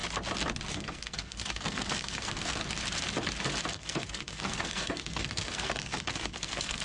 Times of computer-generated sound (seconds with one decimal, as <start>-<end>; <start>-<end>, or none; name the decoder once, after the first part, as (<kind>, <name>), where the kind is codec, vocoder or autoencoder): 0.7-2.6 (codec, SNAC); 3.7-6.8

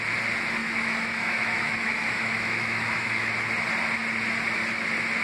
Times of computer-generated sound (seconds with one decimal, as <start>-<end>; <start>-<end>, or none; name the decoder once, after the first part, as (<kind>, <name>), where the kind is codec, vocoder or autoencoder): 0.6-3.3 (autoencoder, DAC-VAE)

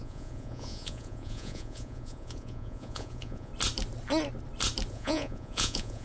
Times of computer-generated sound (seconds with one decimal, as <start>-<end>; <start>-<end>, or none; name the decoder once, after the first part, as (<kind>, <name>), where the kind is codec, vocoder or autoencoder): 0.0-3.5 (vocoder, Vocos); 4.9-6.0

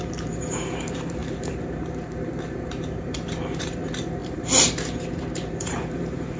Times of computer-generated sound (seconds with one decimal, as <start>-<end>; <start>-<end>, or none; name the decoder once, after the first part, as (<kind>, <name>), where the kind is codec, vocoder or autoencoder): 0.0-6.4 (vocoder, BigVGAN v2)

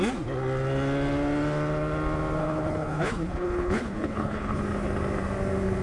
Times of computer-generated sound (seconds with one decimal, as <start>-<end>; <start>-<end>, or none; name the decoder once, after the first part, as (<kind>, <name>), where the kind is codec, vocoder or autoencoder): 2.4-4.6 (codec, HILCodec)

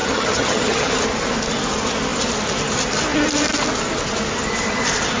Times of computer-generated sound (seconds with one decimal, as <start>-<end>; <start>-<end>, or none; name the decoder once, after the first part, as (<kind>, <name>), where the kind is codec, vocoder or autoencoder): 0.0-0.9 (vocoder, HiFi-GAN)

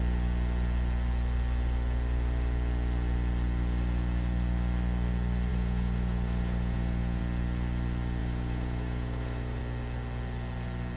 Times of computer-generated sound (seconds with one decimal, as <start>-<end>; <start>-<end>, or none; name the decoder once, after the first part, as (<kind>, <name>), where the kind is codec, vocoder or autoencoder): 5.5-7.2 (vocoder, Vocos); 8.2-9.6

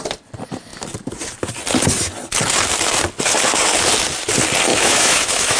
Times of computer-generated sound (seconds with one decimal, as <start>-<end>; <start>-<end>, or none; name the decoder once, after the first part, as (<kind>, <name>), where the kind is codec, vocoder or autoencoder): 4.7-5.6 (autoencoder, DAC-VAE)